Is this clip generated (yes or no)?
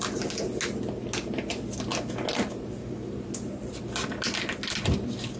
no